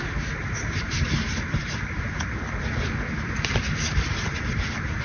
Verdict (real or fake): fake